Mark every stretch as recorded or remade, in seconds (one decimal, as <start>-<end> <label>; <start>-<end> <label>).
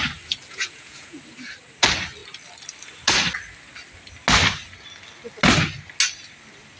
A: 0.0-0.5 recorded; 0.5-1.2 remade; 1.2-6.8 recorded